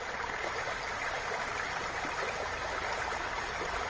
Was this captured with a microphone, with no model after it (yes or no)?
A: yes